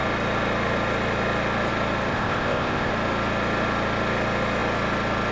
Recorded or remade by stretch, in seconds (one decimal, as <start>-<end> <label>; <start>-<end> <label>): 0.0-2.1 recorded; 2.1-2.9 remade; 2.9-5.3 recorded